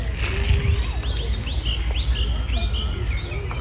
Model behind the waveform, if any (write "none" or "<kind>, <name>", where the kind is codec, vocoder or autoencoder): none